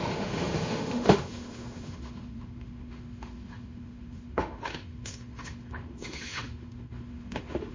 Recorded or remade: remade